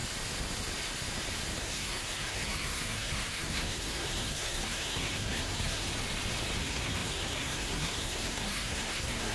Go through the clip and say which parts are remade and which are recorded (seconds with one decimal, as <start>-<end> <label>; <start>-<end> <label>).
0.0-1.6 recorded; 1.6-5.9 remade; 5.9-6.6 recorded; 6.6-9.3 remade